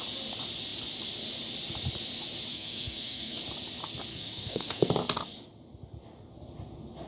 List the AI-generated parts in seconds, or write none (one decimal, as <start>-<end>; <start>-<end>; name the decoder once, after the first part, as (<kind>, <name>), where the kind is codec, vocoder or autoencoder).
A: 2.5-3.4 (codec, SNAC); 4.1-4.9

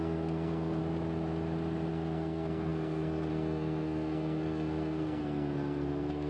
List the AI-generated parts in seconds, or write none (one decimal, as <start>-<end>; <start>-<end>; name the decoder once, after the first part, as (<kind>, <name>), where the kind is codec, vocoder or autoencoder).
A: 0.0-0.8 (codec, SNAC); 1.9-6.3